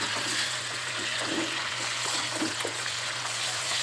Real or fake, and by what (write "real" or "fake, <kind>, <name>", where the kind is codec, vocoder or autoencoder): fake, vocoder, Vocos